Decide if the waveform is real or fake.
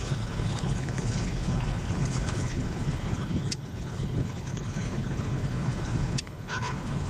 fake